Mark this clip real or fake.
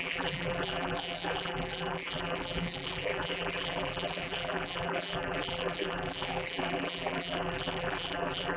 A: fake